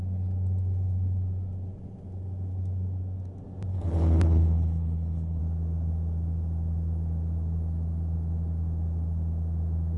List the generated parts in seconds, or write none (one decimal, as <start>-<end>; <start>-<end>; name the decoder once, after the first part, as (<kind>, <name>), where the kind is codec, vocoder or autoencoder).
3.7-5.4 (codec, HILCodec)

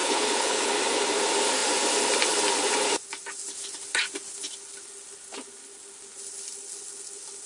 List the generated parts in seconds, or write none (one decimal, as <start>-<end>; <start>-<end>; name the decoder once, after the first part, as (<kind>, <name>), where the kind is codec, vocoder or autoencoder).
0.0-0.7 (codec, HILCodec)

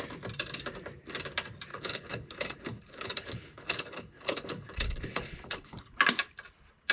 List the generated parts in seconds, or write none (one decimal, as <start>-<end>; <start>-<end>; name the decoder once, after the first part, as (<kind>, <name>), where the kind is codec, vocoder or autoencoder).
1.7-5.8 (codec, HILCodec)

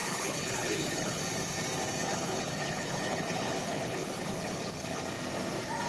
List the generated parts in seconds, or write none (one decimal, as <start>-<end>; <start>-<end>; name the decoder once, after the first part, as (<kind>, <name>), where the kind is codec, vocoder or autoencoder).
0.0-1.2 (codec, HILCodec); 2.0-5.0